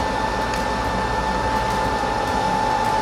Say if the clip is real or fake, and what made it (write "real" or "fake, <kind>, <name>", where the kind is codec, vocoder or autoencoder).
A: real